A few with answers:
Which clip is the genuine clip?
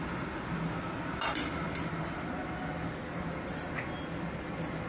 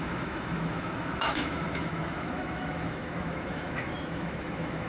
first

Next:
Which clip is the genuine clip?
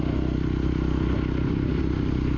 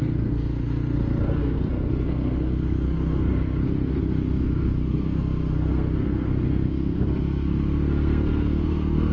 first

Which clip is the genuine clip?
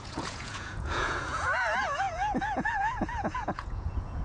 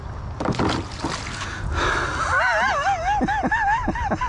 second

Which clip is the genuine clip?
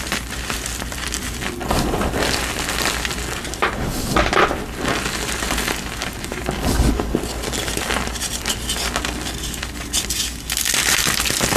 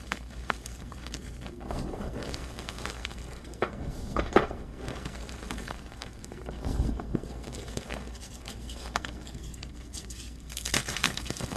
first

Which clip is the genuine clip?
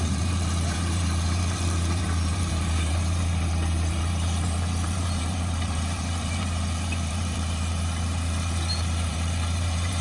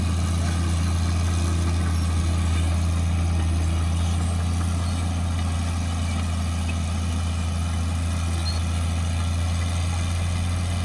second